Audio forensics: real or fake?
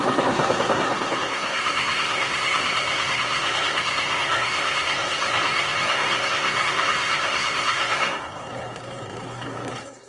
fake